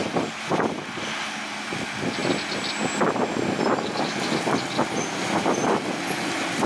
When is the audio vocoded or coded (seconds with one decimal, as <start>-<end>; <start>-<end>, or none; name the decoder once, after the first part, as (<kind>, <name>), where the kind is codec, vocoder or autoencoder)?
none

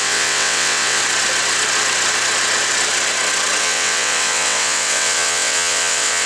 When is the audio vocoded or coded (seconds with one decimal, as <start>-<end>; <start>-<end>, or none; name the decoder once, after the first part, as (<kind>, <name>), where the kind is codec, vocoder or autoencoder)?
0.0-1.0 (vocoder, WaveNeXt); 3.6-6.3

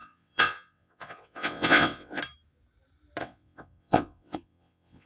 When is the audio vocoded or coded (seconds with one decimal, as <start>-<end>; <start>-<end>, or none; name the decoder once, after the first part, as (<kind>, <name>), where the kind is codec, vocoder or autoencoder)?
0.0-2.2 (vocoder, WaveNeXt); 3.2-5.1

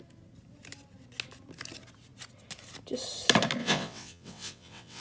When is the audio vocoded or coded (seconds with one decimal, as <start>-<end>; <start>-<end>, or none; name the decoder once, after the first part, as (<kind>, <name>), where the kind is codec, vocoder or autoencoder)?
3.6-5.0 (vocoder, WaveNeXt)